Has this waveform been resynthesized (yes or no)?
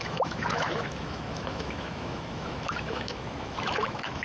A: yes